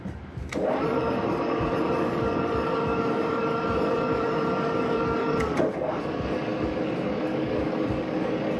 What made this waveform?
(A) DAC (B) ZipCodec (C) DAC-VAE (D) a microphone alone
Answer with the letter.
A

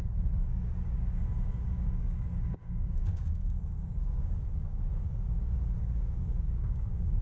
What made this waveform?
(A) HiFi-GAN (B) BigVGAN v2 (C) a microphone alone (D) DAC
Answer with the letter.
D